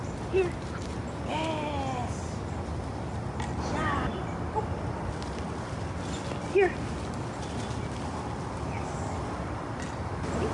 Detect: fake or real real